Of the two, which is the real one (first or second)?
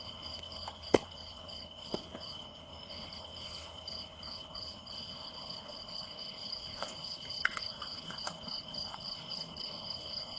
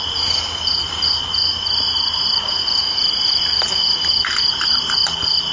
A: second